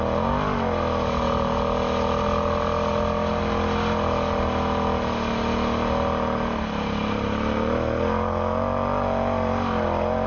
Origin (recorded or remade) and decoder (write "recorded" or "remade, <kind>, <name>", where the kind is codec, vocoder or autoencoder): recorded